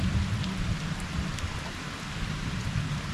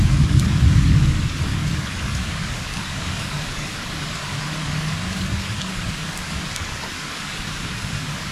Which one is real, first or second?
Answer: first